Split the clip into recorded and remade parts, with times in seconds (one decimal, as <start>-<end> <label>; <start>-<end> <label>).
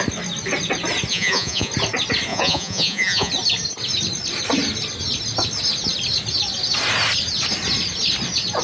0.0-1.1 recorded; 1.1-1.7 remade; 1.7-2.3 recorded; 2.3-3.3 remade; 3.3-8.6 recorded